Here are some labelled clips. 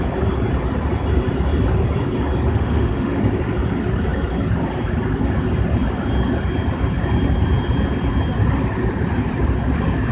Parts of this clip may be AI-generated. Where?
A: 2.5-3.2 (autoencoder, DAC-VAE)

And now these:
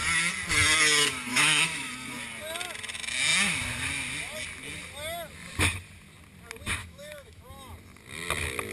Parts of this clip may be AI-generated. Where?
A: 1.3-1.9 (autoencoder, DAC-VAE); 6.8-7.4

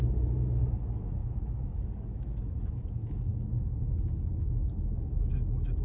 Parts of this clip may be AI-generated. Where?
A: 0.0-5.8 (autoencoder, DAC-VAE)

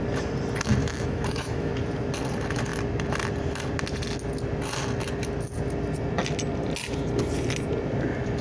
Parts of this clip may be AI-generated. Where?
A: 0.8-1.7 (autoencoder, DAC-VAE)

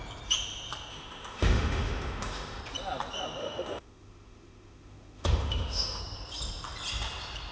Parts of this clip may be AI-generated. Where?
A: 0.9-2.6 (autoencoder, DAC-VAE); 3.4-6.0